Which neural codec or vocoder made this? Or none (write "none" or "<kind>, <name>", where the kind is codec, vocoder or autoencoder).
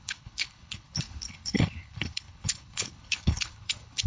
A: codec, HILCodec